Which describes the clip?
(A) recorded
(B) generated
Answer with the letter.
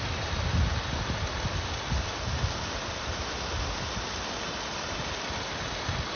A